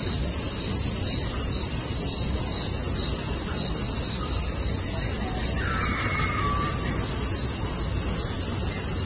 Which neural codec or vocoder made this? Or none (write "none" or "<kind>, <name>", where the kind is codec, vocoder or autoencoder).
none